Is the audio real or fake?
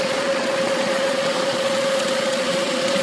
fake